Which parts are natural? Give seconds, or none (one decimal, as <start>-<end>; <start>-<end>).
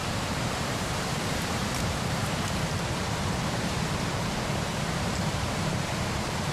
3.9-4.7